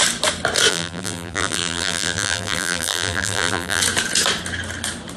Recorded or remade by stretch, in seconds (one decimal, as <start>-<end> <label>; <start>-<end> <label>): 0.0-0.7 recorded; 0.7-3.8 remade; 3.8-5.2 recorded